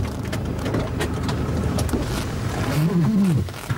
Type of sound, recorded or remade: recorded